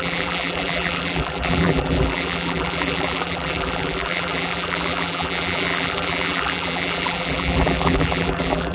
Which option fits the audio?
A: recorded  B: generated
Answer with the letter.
B